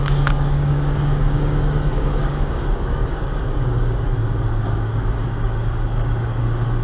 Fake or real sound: fake